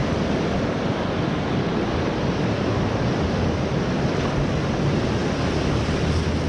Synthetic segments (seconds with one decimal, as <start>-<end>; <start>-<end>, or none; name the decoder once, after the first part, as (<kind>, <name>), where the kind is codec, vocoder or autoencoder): none